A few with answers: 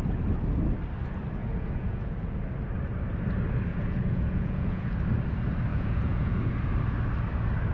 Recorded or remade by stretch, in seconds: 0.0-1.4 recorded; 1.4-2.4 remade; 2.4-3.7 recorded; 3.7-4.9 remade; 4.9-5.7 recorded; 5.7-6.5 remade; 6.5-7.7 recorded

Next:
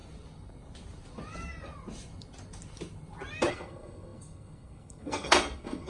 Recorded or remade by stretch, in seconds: 0.0-3.5 recorded; 3.5-5.9 remade

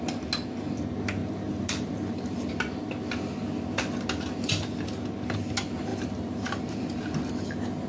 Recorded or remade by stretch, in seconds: 0.0-1.2 recorded; 1.2-2.5 remade; 2.5-5.9 recorded; 5.9-7.3 remade; 7.3-7.9 recorded

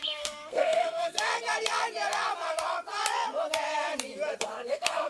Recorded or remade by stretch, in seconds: 0.0-1.3 remade; 1.3-4.4 recorded; 4.4-5.1 remade

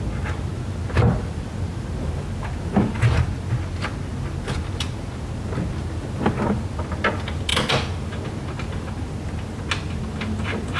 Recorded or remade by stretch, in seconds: 0.0-10.8 recorded

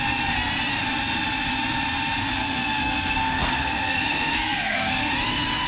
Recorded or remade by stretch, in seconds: 0.0-2.2 recorded; 2.2-5.1 remade; 5.1-5.7 recorded

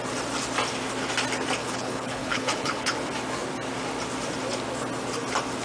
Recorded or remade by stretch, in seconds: 0.0-1.6 recorded; 1.6-2.9 remade; 2.9-5.6 recorded